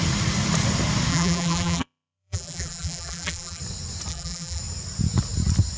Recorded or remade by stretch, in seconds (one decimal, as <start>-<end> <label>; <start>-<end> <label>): 0.0-1.1 recorded; 1.1-3.6 remade; 3.6-4.1 recorded; 4.1-4.6 remade; 4.6-5.8 recorded